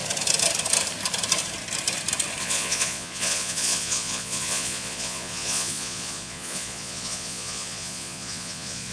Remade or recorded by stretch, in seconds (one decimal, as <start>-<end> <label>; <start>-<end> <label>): 0.0-2.4 recorded; 2.4-8.9 remade